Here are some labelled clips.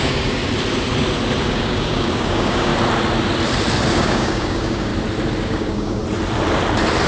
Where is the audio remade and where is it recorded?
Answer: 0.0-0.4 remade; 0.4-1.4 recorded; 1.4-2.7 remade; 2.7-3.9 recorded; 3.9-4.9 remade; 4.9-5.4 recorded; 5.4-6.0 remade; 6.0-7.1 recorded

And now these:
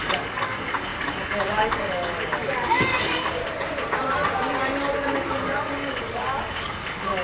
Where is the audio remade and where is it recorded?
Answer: 0.0-3.4 remade; 3.4-5.3 recorded; 5.3-7.2 remade

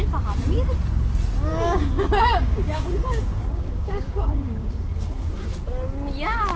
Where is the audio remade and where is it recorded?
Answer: 0.0-1.5 recorded; 1.5-5.5 remade; 5.5-6.6 recorded